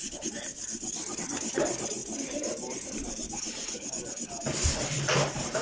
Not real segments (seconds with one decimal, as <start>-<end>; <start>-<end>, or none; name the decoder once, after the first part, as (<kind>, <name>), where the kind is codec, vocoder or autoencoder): none